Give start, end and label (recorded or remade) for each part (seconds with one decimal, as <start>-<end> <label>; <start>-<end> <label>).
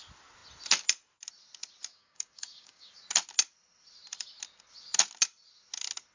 0.0-1.9 recorded; 1.9-2.9 remade; 2.9-6.1 recorded